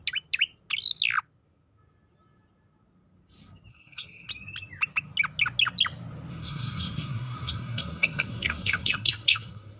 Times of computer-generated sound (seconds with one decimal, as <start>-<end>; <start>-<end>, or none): 3.7-4.3; 6.3-9.8